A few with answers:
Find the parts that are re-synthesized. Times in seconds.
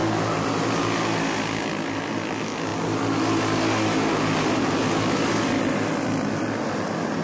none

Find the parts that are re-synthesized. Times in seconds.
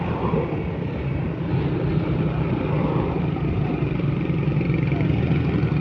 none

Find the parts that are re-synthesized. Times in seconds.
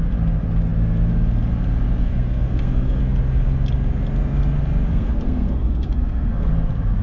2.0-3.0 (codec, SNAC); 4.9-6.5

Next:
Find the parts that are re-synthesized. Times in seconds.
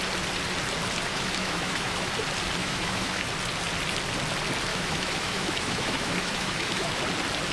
1.1-2.1 (autoencoder, DAC-VAE); 2.6-3.2; 4.7-7.0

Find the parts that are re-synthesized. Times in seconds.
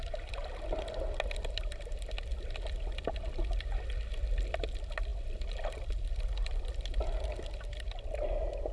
none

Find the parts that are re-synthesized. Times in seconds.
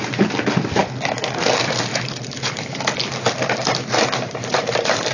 1.9-2.7 (vocoder, BigVGAN v2); 3.6-5.1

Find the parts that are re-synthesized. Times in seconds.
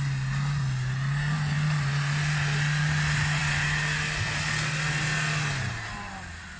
none